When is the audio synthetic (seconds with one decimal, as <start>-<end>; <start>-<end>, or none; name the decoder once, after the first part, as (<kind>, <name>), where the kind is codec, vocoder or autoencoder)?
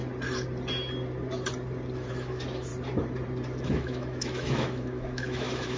2.1-2.7 (autoencoder, DAC-VAE); 3.6-5.8